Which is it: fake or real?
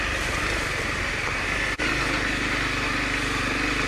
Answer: real